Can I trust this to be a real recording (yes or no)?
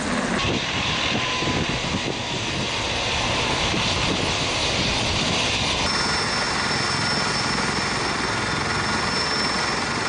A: yes